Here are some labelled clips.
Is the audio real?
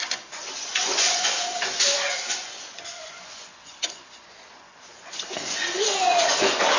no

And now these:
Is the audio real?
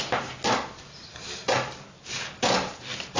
yes